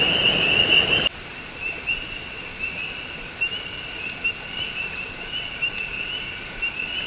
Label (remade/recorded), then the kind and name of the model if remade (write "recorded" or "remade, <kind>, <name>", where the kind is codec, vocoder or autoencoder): recorded